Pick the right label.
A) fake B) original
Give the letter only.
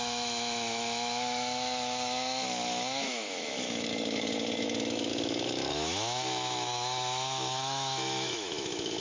A